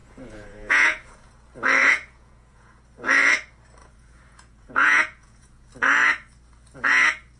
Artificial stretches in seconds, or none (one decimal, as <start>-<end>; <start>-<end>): 0.0-1.3; 1.8-2.8; 3.8-5.7